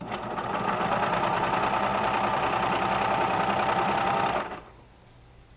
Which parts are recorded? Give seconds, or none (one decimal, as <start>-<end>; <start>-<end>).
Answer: 0.0-1.9